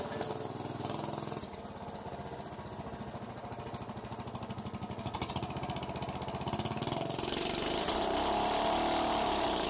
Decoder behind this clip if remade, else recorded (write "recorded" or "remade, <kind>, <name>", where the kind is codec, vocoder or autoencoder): recorded